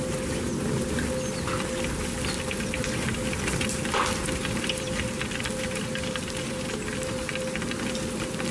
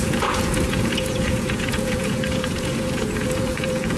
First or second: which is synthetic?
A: second